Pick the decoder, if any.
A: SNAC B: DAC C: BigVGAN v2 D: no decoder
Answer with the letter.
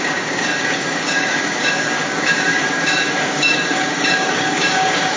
B